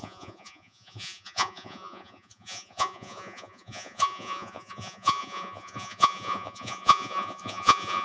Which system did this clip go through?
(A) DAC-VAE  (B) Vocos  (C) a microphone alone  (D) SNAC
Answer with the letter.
B